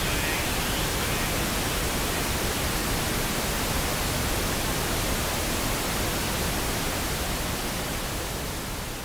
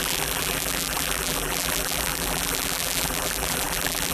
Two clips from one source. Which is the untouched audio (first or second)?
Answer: first